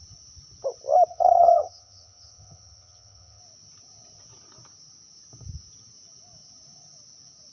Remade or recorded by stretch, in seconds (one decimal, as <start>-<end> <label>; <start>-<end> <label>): 0.0-1.1 recorded; 1.1-3.4 remade; 3.4-7.5 recorded